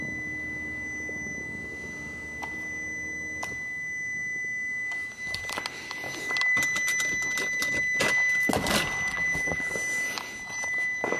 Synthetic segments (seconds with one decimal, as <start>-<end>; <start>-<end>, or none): 9.1-9.7